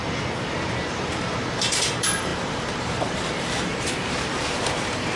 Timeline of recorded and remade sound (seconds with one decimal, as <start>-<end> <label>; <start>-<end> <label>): 0.0-1.1 recorded; 1.1-5.2 remade